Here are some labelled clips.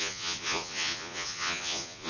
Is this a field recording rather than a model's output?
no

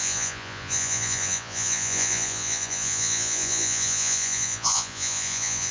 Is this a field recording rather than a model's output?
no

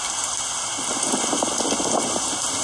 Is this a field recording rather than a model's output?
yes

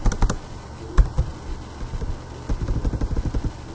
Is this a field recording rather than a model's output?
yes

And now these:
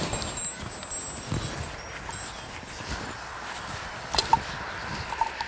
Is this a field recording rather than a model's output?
yes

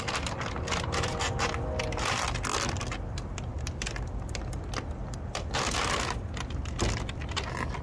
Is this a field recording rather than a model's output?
yes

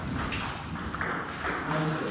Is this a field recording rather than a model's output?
yes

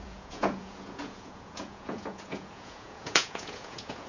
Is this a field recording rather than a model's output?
no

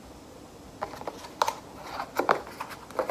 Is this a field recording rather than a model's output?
yes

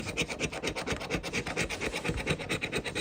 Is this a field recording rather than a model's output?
yes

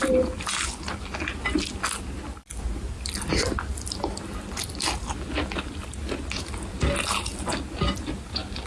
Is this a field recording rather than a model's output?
yes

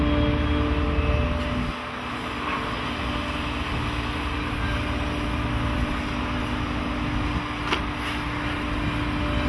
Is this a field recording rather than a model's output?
yes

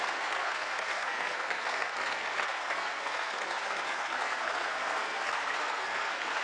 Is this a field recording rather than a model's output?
no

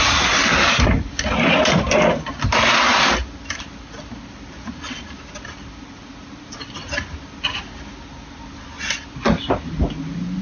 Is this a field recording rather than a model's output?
yes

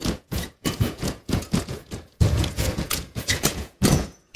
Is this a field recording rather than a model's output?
no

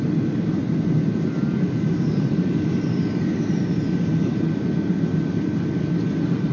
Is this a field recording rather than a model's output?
yes